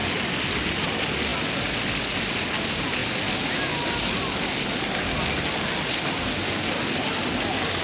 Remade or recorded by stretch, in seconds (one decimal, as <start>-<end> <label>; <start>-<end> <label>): 0.0-7.8 recorded

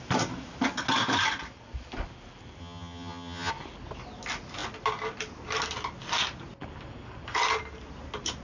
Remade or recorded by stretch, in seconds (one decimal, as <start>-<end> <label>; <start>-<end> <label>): 0.0-2.6 recorded; 2.6-3.5 remade; 3.5-8.4 recorded

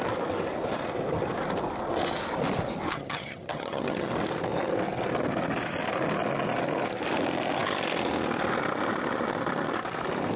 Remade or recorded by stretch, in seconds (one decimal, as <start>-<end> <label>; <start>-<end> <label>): 0.0-2.9 recorded; 2.9-4.1 remade; 4.1-10.4 recorded

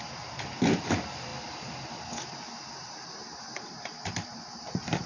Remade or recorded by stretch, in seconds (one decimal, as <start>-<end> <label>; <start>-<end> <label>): 0.0-5.1 recorded

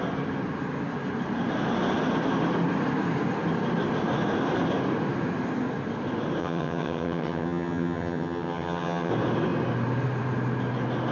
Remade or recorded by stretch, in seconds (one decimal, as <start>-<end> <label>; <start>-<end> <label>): 0.0-6.4 recorded; 6.4-9.1 remade; 9.1-11.1 recorded

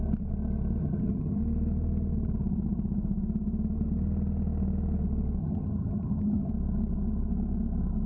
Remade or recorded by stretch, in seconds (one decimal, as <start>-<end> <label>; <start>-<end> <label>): 0.0-0.8 recorded; 0.8-1.4 remade; 1.4-5.4 recorded; 5.4-6.5 remade; 6.5-8.1 recorded

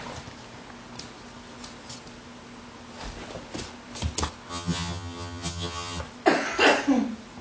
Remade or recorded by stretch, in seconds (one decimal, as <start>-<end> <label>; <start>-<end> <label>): 0.0-4.5 recorded; 4.5-6.0 remade; 6.0-7.4 recorded

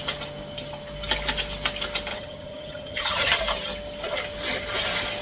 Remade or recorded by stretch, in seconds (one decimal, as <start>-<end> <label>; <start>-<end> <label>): 0.0-2.1 recorded; 2.1-3.4 remade; 3.4-5.2 recorded